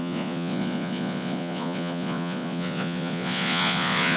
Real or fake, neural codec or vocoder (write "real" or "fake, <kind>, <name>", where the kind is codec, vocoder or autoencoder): fake, vocoder, Vocos